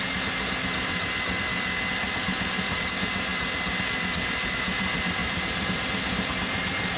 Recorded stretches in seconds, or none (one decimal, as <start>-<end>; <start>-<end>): 0.0-5.2; 6.3-7.0